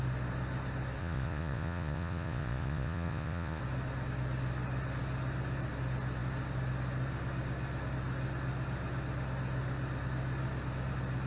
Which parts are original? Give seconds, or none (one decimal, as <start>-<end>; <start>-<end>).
0.0-1.0; 3.6-11.3